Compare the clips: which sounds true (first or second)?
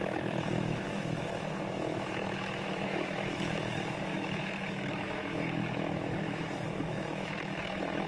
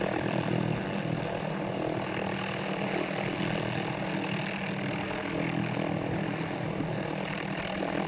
second